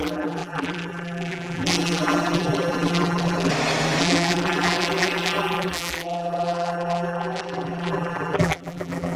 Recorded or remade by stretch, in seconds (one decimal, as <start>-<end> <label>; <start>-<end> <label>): 0.0-3.5 remade; 3.5-4.0 recorded; 4.0-9.2 remade